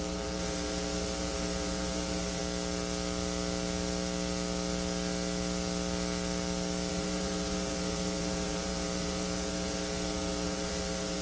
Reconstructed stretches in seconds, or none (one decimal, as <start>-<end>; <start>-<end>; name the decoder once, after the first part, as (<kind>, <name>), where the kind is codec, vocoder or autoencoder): 0.0-2.4 (vocoder, BigVGAN v2); 6.9-11.2